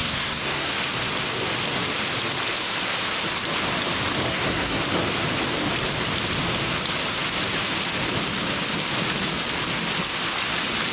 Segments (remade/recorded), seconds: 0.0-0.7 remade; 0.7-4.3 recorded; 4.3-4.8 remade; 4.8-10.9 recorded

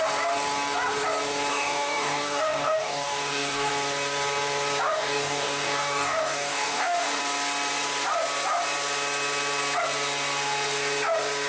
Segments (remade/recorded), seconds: 0.0-1.5 recorded; 1.5-3.7 remade; 3.7-4.9 recorded; 4.9-7.2 remade; 7.2-11.5 recorded

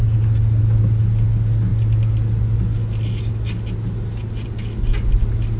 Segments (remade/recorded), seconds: 0.0-5.6 recorded